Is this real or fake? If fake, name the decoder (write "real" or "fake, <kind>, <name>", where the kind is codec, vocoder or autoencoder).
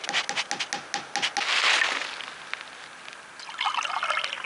real